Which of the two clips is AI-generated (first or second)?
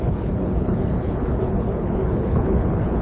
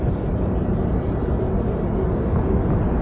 first